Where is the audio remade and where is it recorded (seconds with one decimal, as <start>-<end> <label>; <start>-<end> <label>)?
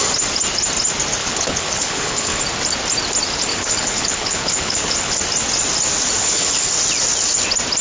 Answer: 0.0-1.2 recorded; 1.2-2.4 remade; 2.4-3.5 recorded; 3.5-5.2 remade; 5.2-6.2 recorded; 6.2-6.7 remade; 6.7-7.8 recorded